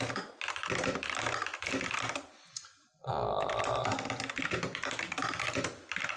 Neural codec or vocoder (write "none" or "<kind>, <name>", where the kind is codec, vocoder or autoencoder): none